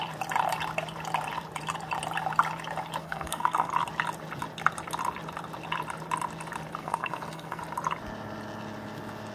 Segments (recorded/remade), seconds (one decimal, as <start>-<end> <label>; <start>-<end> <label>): 0.0-3.0 recorded; 3.0-3.7 remade; 3.7-6.8 recorded; 6.8-7.6 remade; 7.6-9.3 recorded